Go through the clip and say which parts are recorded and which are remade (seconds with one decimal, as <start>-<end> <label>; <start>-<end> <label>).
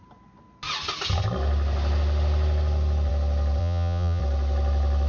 0.0-3.6 recorded; 3.6-4.2 remade; 4.2-5.1 recorded